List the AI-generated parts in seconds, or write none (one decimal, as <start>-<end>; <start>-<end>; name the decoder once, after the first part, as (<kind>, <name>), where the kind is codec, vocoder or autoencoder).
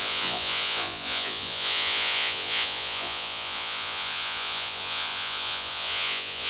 0.0-6.5 (vocoder, Vocos)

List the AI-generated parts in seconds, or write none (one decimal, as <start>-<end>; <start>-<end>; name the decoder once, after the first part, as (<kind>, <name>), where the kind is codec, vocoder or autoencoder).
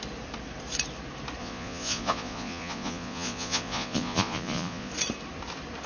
1.4-4.9 (vocoder, Vocos)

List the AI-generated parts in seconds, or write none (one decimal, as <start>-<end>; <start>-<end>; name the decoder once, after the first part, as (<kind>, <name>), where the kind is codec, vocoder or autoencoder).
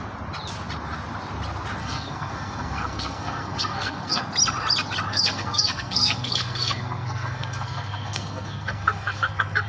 1.8-4.2 (codec, SNAC); 5.1-9.7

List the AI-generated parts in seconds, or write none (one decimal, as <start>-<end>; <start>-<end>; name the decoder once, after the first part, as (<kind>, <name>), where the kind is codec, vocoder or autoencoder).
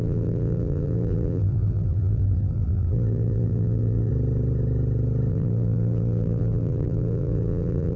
0.0-4.1 (vocoder, BigVGAN v2); 5.3-8.0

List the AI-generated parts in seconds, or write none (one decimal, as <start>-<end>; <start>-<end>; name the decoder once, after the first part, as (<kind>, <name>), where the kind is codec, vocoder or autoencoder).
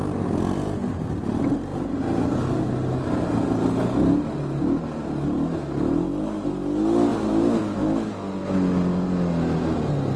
none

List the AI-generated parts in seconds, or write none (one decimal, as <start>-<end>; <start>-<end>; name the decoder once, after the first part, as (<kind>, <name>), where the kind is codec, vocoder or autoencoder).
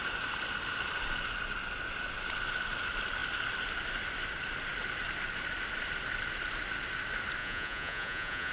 7.4-8.5 (vocoder, Vocos)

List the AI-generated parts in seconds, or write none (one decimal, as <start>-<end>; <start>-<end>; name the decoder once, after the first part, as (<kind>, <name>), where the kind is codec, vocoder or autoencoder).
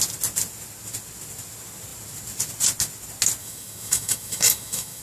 3.4-5.0 (autoencoder, DAC-VAE)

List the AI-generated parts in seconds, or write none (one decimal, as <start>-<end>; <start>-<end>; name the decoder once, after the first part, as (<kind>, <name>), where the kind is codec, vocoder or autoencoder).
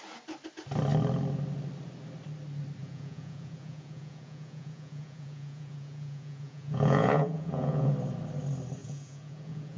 2.8-7.9 (vocoder, Vocos); 8.8-9.8